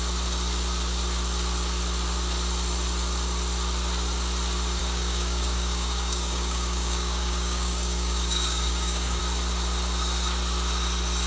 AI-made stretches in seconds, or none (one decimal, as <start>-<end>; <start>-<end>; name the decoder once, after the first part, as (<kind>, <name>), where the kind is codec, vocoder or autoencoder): 4.8-9.2 (codec, DAC)